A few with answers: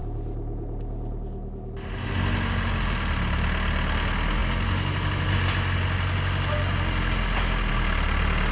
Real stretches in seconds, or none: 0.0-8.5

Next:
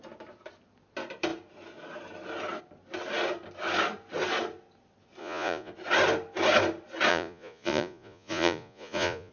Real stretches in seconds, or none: 0.0-5.2; 5.7-7.1

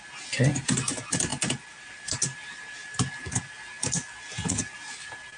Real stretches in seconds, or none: 0.0-5.4

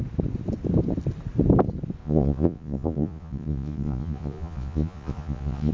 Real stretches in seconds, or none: 0.0-2.0